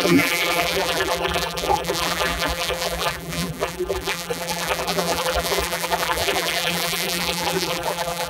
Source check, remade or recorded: remade